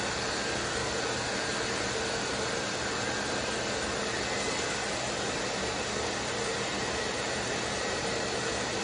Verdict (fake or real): fake